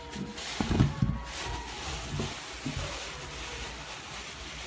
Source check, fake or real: real